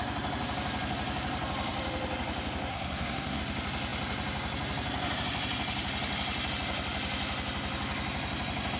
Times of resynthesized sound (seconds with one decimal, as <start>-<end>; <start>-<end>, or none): 2.7-3.4